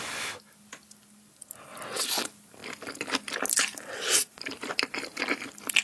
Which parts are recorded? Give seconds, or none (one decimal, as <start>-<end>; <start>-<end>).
0.0-4.2; 5.2-5.8